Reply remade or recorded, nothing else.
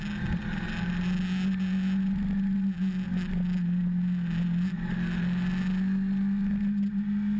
recorded